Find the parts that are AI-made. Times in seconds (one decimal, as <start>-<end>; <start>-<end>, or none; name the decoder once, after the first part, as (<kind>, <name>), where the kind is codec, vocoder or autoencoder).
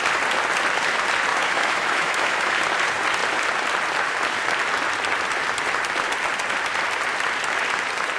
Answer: 1.3-2.6 (autoencoder, DAC-VAE)